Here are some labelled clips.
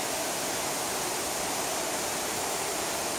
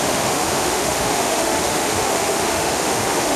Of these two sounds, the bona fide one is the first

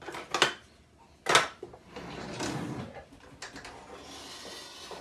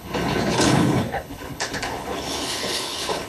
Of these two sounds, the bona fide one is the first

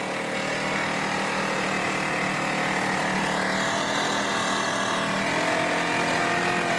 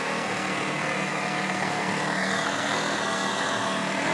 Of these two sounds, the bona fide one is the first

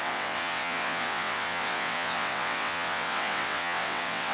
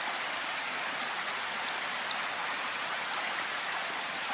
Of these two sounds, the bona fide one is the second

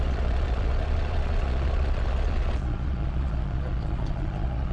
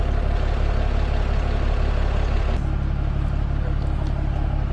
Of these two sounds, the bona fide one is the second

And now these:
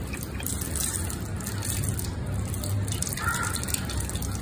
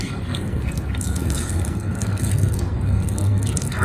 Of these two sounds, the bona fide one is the first